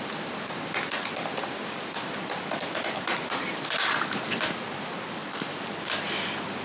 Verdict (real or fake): real